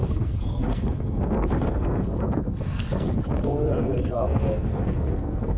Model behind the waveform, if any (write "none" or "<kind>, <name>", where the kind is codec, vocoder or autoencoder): codec, SNAC